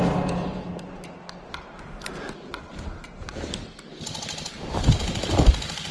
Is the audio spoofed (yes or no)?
no